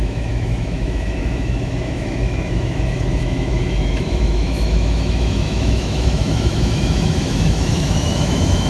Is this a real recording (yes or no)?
no